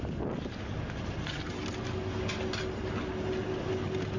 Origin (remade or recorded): recorded